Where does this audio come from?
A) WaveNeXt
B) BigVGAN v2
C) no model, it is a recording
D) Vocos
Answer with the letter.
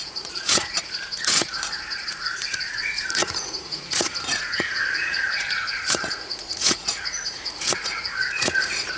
D